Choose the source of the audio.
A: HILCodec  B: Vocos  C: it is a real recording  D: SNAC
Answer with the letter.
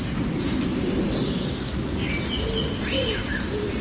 C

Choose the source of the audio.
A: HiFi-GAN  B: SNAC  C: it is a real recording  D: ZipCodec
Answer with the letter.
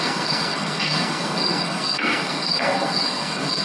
B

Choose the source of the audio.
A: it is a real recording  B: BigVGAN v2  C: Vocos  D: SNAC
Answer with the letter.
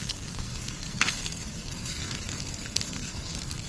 D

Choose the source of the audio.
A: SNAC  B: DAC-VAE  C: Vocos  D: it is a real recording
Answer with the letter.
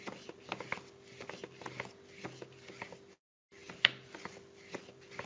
D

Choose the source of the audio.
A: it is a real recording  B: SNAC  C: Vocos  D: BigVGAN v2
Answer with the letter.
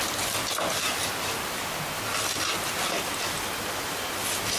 A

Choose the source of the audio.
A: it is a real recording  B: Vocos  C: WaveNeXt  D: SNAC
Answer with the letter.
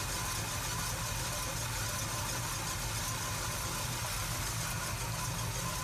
A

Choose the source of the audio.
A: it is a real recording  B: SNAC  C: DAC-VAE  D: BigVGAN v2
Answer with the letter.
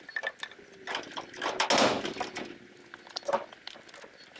A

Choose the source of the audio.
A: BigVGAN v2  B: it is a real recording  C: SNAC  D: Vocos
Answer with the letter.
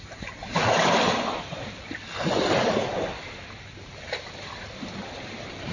B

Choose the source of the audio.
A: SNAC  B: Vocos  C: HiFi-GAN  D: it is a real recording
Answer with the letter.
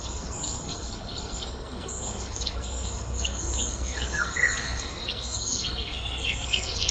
A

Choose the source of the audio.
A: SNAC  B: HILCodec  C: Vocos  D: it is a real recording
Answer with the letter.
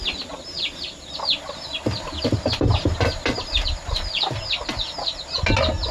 D